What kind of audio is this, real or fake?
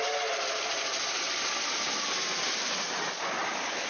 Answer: real